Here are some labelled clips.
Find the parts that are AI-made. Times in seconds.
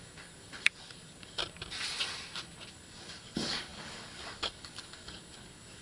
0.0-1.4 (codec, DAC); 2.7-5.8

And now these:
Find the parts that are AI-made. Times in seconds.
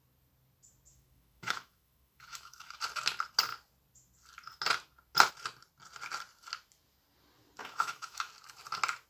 0.9-2.8 (autoencoder, DAC-VAE); 7.6-8.3